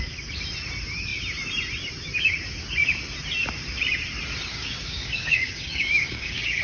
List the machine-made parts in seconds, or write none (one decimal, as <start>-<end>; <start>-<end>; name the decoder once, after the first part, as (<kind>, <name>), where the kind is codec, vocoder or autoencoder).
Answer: 4.5-6.6 (codec, DAC)